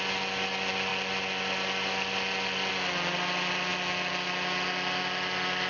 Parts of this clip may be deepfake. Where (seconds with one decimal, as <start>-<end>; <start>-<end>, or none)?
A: none